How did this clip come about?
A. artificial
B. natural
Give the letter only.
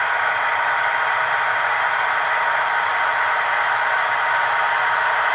B